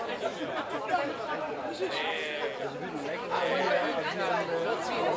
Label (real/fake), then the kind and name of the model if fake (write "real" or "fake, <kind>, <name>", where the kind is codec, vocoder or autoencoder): real